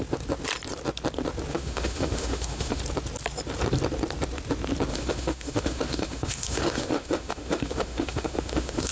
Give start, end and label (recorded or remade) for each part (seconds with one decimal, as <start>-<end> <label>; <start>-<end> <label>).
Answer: 0.0-1.5 recorded; 1.5-2.8 remade; 2.8-4.9 recorded; 4.9-8.9 remade